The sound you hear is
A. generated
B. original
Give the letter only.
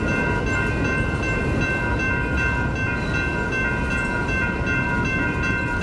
B